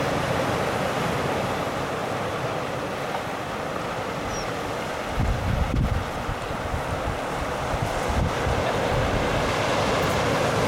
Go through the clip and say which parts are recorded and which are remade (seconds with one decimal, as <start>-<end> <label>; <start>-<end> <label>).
0.0-10.7 recorded